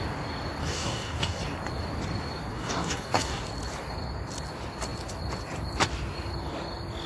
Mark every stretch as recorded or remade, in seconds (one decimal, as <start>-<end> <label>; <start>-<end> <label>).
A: 0.0-0.6 recorded; 0.6-1.4 remade; 1.4-2.5 recorded; 2.5-3.4 remade; 3.4-7.1 recorded